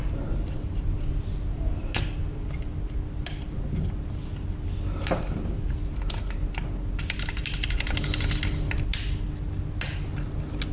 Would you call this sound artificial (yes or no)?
no